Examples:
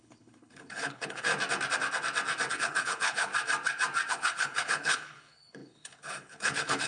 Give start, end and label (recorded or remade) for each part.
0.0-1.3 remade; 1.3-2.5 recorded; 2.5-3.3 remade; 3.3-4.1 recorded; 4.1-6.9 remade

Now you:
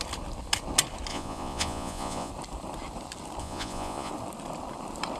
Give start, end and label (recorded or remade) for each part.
0.0-1.1 recorded; 1.1-2.3 remade; 2.3-3.4 recorded; 3.4-4.1 remade; 4.1-5.2 recorded

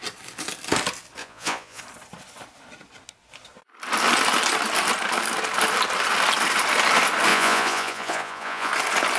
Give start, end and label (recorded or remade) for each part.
0.0-1.2 recorded; 1.2-1.8 remade; 1.8-7.3 recorded; 7.3-8.7 remade; 8.7-9.2 recorded

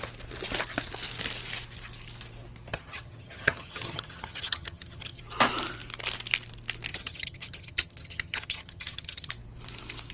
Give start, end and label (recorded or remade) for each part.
0.0-2.7 recorded; 2.7-5.2 remade; 5.2-6.9 recorded; 6.9-9.3 remade; 9.3-10.1 recorded

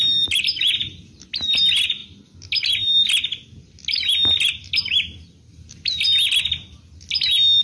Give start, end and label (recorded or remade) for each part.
0.0-7.6 recorded

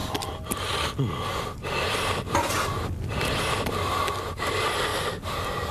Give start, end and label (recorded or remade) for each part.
0.0-5.7 recorded

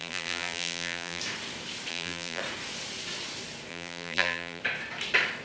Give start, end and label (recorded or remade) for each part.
0.0-1.2 remade; 1.2-1.9 recorded; 1.9-2.4 remade; 2.4-3.7 recorded; 3.7-4.6 remade; 4.6-5.4 recorded

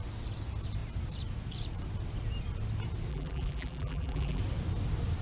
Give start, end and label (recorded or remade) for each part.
0.0-3.1 recorded; 3.1-4.4 remade; 4.4-5.2 recorded